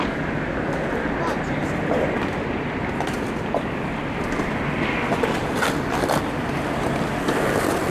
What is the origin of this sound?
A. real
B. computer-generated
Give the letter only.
A